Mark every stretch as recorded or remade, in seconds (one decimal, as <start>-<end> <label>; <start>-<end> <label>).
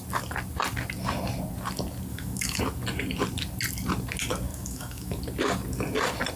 0.0-2.1 recorded; 2.1-2.6 remade; 2.6-4.5 recorded; 4.5-5.2 remade; 5.2-6.4 recorded